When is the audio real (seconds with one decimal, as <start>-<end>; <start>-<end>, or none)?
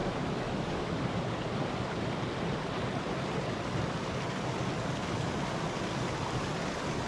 1.0-7.1